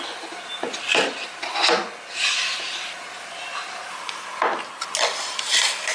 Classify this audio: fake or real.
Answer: real